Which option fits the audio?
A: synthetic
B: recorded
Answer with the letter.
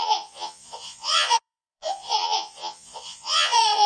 A